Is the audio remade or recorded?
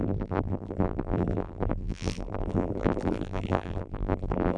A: remade